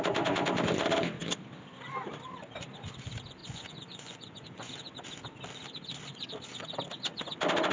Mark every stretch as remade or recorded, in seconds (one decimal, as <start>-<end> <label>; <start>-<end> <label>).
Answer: 0.0-3.4 recorded; 3.4-4.7 remade; 4.7-7.7 recorded